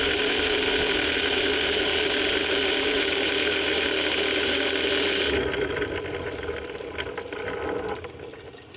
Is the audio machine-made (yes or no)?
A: no